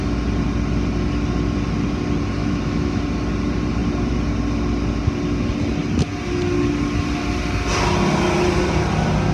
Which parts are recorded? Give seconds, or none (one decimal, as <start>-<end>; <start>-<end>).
0.0-2.4; 3.0-9.3